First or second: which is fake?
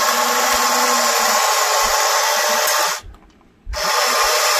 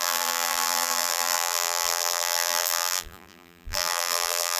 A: second